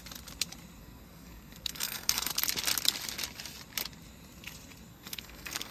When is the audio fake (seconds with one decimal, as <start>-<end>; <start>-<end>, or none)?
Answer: 0.8-2.3; 4.9-5.7